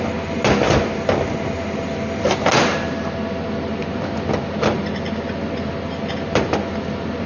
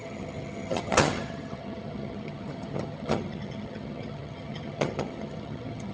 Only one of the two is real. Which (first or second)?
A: first